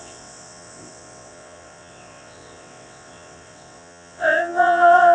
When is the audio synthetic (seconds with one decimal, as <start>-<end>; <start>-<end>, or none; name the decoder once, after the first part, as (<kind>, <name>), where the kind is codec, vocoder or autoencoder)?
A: 0.0-5.1 (vocoder, WaveNeXt)